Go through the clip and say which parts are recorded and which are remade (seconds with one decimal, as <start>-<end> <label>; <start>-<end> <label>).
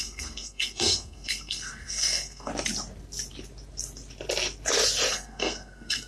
0.0-2.5 remade; 2.5-5.1 recorded; 5.1-6.1 remade